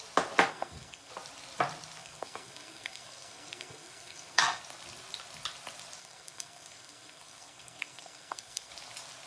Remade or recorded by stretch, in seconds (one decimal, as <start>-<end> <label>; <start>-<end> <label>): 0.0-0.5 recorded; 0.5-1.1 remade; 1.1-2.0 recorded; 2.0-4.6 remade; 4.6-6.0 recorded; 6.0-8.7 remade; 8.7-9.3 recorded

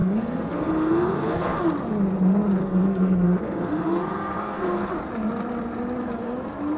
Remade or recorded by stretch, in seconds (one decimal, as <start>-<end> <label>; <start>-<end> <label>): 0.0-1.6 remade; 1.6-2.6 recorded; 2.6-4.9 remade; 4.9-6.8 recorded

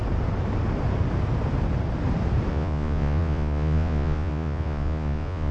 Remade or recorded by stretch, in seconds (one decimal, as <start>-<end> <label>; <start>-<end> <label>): 0.0-2.5 recorded; 2.5-5.5 remade

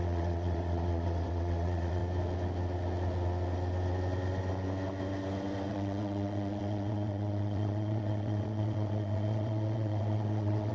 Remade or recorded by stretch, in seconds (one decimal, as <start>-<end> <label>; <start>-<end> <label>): 0.0-2.0 remade; 2.0-5.7 recorded; 5.7-10.7 remade

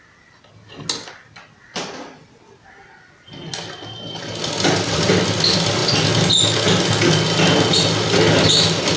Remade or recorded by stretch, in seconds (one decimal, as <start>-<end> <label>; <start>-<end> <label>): 0.0-9.0 recorded

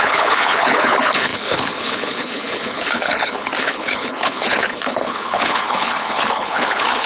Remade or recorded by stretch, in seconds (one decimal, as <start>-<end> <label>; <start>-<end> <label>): 0.0-7.1 remade

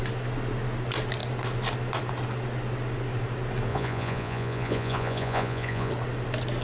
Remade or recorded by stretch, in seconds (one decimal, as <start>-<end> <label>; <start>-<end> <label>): 0.0-3.7 recorded; 3.7-5.9 remade; 5.9-6.6 recorded